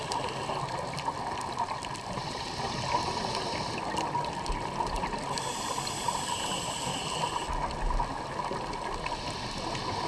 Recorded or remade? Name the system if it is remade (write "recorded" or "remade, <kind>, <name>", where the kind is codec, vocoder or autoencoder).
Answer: recorded